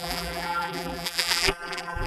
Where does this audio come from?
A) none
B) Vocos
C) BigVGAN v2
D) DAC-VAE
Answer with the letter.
C